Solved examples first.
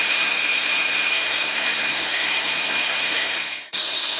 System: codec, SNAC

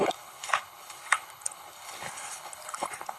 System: codec, HILCodec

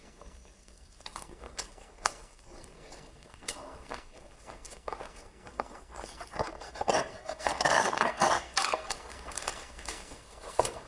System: codec, SNAC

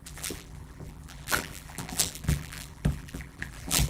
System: vocoder, BigVGAN v2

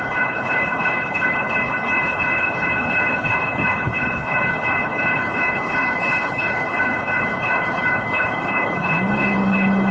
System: codec, HILCodec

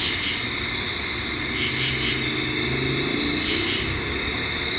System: none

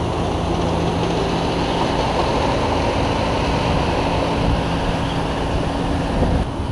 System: none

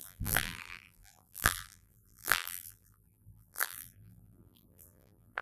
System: vocoder, BigVGAN v2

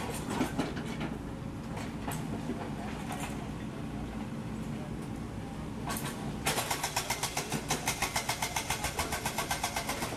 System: none